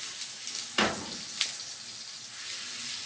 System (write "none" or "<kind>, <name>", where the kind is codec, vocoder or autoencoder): none